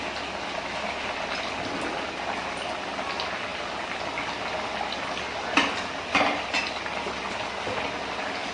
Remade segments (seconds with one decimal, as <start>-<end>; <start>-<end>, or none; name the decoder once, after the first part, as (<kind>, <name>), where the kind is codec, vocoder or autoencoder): none